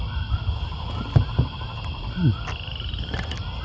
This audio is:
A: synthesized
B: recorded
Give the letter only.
B